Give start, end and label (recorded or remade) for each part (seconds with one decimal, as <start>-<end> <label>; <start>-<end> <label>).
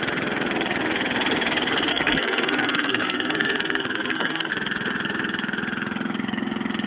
0.0-1.9 recorded; 1.9-4.5 remade; 4.5-6.9 recorded